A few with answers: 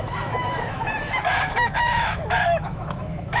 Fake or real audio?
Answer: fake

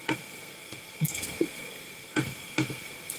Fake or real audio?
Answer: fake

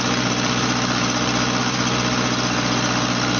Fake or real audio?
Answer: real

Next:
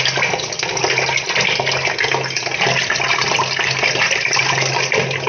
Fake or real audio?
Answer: real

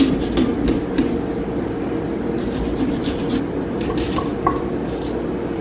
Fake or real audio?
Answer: real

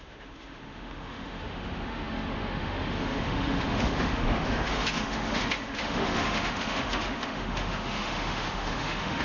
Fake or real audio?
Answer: fake